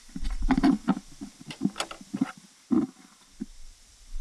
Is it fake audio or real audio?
real